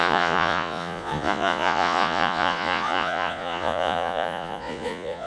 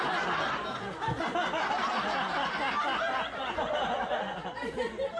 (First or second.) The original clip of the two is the second